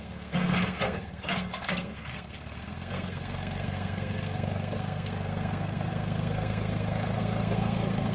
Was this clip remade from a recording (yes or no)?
yes